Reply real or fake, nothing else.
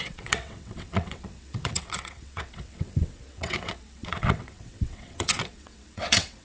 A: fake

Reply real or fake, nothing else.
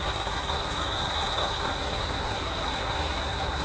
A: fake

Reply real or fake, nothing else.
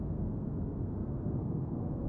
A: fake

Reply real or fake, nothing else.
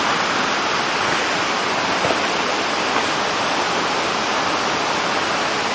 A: fake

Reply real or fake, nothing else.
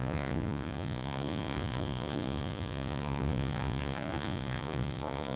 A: fake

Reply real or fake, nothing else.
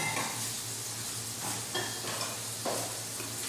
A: real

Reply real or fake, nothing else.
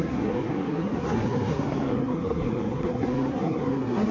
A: fake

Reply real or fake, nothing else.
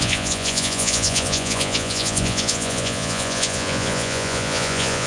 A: fake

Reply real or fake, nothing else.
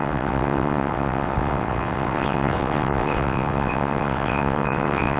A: fake